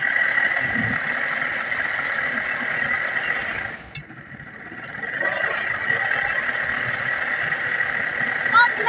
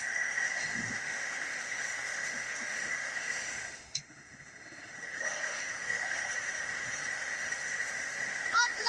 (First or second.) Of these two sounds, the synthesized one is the second